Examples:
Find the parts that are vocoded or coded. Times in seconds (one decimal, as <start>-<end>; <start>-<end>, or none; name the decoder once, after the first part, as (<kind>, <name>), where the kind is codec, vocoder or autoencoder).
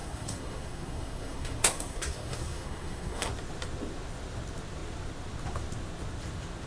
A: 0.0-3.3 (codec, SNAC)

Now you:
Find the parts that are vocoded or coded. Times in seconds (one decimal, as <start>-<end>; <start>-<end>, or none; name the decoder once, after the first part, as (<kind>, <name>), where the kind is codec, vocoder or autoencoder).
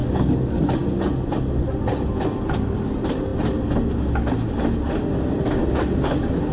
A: 0.0-0.6 (codec, DAC)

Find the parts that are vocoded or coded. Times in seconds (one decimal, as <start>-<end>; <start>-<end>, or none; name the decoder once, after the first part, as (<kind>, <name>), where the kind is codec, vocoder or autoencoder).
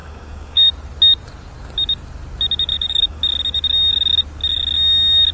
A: 0.0-0.7 (codec, DAC); 2.7-3.2